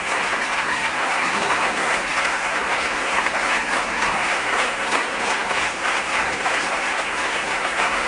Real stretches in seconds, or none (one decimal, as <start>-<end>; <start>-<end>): none